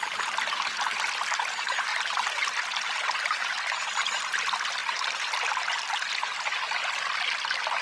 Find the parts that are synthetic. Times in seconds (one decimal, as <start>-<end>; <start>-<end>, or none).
none